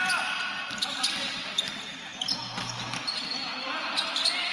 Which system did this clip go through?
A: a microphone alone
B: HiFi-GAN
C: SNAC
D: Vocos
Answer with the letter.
A